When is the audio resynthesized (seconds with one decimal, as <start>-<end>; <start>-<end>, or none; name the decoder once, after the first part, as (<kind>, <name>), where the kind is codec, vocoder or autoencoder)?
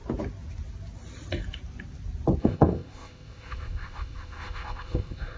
2.4-5.4 (codec, ZipCodec)